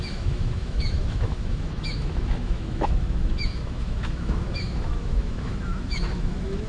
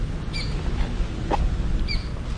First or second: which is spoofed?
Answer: first